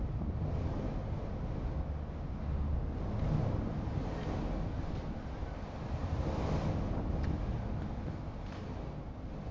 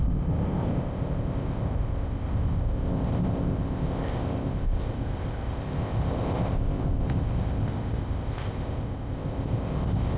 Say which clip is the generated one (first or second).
second